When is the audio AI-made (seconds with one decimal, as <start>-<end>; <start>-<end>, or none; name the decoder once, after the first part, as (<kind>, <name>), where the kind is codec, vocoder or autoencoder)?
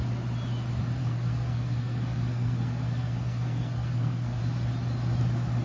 1.0-4.4 (codec, SNAC)